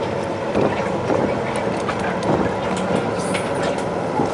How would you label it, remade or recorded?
recorded